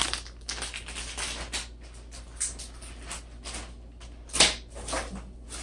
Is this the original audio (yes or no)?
yes